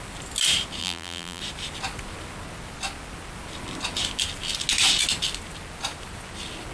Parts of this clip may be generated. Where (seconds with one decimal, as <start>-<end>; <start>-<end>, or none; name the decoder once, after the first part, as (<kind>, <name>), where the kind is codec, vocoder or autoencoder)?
0.8-1.4 (vocoder, BigVGAN v2)